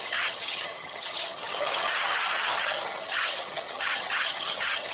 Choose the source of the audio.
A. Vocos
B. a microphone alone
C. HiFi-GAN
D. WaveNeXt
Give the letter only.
C